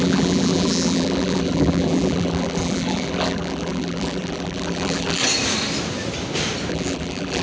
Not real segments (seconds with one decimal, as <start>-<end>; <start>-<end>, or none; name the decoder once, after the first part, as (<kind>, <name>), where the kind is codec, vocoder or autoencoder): 0.0-5.2 (vocoder, BigVGAN v2); 6.7-7.4